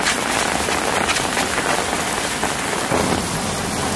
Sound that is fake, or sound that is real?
real